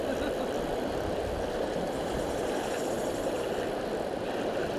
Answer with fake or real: real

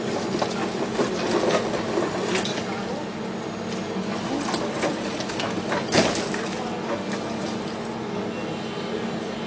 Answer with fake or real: real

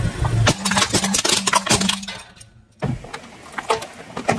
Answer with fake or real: real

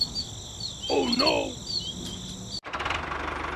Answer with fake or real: real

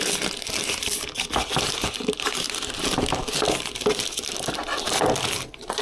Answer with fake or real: real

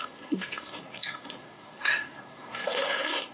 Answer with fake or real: fake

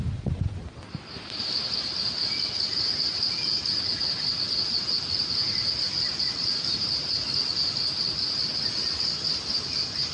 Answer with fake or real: real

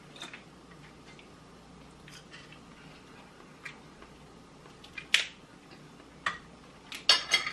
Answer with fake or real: real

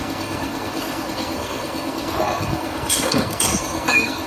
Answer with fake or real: fake